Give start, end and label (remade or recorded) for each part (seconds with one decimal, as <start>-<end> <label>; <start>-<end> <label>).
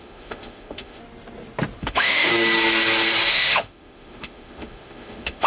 0.0-1.0 remade; 1.0-1.8 recorded; 1.8-2.3 remade; 2.3-3.3 recorded; 3.3-5.5 remade